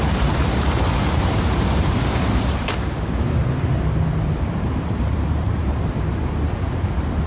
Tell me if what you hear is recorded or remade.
remade